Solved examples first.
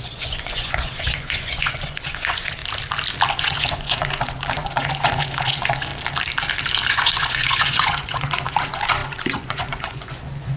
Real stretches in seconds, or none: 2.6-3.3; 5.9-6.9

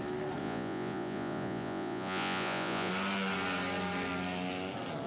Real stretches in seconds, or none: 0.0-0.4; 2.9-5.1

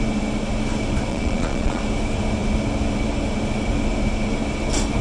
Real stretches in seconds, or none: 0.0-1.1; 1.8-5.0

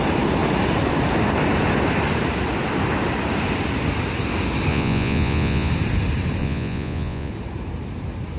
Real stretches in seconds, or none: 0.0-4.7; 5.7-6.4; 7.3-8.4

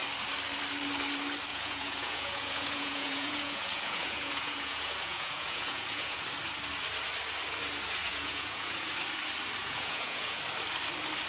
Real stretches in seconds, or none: 0.0-1.5; 6.2-8.0; 8.9-9.6; 10.4-11.3